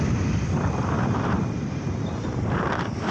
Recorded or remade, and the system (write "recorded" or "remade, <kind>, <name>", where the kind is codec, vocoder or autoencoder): remade, vocoder, BigVGAN v2